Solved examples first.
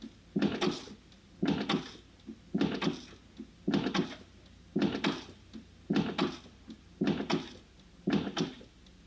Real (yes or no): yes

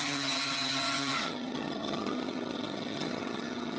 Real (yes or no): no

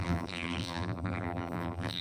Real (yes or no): no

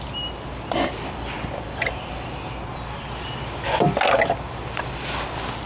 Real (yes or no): yes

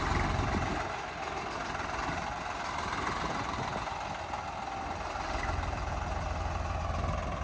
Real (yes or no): yes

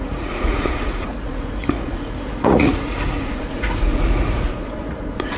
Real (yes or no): no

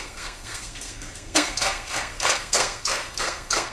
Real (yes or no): no